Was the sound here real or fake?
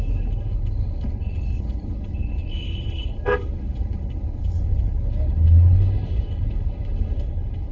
fake